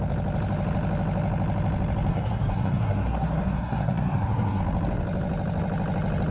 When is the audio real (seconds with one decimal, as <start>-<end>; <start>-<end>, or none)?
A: 0.0-2.1; 4.6-6.3